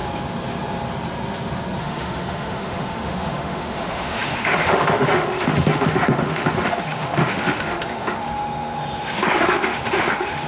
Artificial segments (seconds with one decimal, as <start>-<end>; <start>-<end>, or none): 1.8-10.5